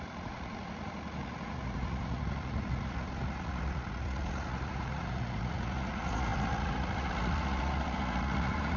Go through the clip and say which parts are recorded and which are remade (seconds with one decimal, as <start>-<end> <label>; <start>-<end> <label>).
0.0-8.8 remade